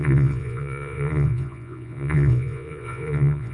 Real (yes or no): no